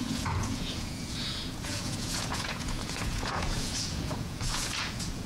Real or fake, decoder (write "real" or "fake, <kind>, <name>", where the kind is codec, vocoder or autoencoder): fake, vocoder, Vocos